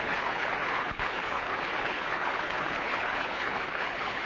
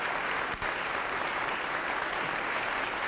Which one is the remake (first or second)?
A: first